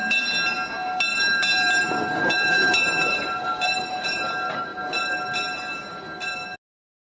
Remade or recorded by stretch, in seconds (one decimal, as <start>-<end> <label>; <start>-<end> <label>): 0.0-1.1 recorded; 1.1-4.2 remade; 4.2-7.0 recorded